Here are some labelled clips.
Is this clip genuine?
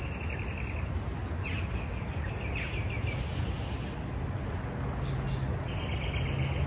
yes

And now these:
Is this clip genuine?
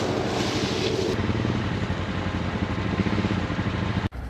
yes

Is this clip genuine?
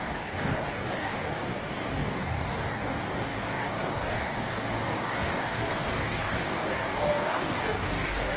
no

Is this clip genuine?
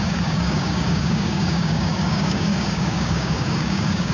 no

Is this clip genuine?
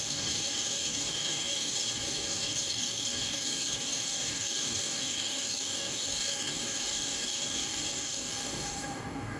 no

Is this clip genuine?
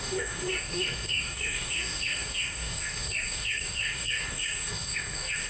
no